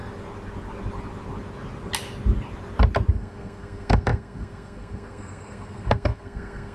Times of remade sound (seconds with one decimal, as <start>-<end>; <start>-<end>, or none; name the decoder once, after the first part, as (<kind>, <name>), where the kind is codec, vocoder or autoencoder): 3.1-6.7 (codec, SNAC)